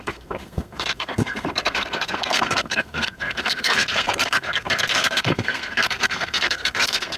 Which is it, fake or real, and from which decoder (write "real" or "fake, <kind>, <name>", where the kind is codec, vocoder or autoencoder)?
fake, codec, SNAC